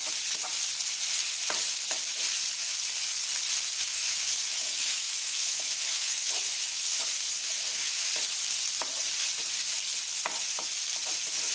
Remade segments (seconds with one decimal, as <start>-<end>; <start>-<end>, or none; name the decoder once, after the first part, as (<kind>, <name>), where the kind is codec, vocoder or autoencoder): 3.9-7.0 (autoencoder, DAC-VAE); 7.4-8.1